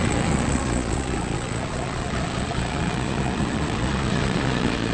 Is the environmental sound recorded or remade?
remade